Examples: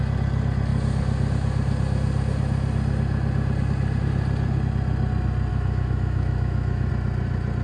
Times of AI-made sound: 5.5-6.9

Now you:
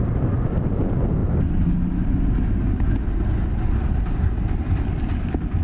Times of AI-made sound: none

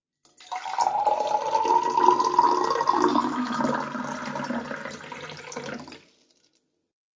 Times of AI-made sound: 3.1-3.6